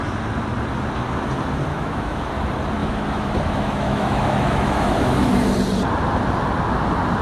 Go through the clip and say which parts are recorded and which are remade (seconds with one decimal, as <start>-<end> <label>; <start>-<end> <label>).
0.0-1.7 recorded; 1.7-2.2 remade; 2.2-2.8 recorded; 2.8-5.3 remade; 5.3-7.2 recorded